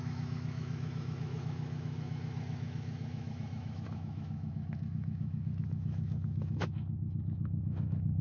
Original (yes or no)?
no